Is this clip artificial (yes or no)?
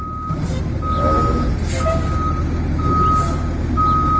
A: no